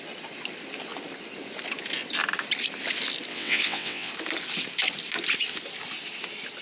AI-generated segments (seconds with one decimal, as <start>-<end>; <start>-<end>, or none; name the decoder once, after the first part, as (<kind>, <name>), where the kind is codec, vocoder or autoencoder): 3.3-4.1 (vocoder, WaveNeXt)